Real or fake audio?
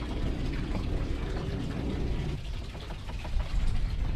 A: real